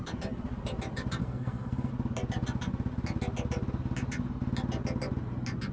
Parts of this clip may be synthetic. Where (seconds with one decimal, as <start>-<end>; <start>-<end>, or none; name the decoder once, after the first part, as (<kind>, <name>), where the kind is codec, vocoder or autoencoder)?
1.2-1.9 (codec, SNAC)